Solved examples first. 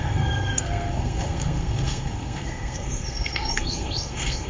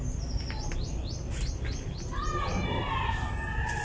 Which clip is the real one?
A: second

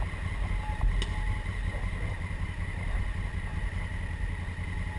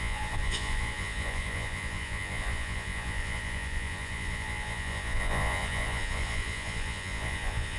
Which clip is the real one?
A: first